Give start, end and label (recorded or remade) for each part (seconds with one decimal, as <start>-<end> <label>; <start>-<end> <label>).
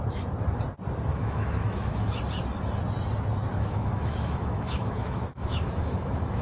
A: 0.0-1.1 recorded; 1.1-2.2 remade; 2.2-3.5 recorded; 3.5-6.4 remade